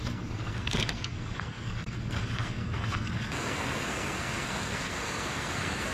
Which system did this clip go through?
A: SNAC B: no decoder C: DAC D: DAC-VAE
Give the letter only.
A